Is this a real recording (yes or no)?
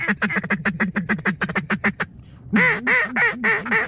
yes